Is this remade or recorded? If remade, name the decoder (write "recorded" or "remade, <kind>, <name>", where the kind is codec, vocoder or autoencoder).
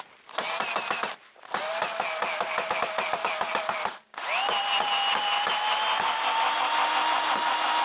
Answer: recorded